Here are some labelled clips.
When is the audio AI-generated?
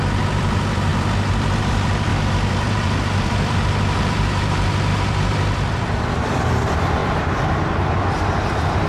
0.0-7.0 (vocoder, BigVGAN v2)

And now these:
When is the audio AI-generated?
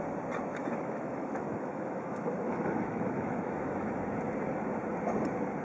0.6-4.0 (autoencoder, DAC-VAE)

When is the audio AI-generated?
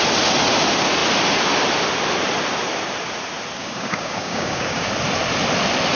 3.6-4.9 (codec, DAC)